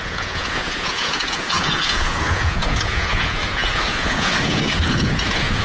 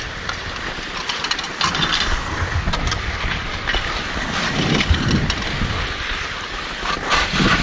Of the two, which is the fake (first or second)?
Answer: first